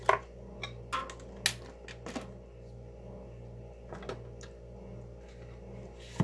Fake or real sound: real